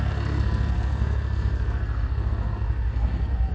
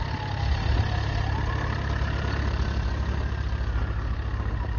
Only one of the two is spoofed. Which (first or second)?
first